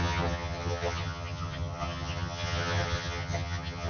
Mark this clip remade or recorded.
remade